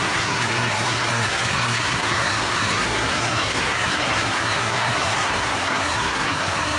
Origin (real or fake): fake